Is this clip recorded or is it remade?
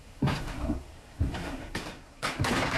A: remade